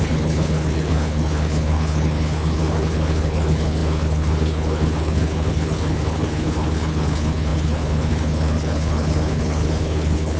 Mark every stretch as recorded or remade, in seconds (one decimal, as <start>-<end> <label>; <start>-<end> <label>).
0.0-10.4 remade